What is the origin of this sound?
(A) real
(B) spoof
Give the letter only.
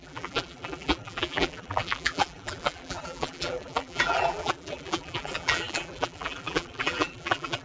B